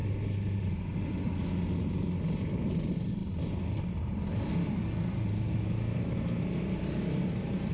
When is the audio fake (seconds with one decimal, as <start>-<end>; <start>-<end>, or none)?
none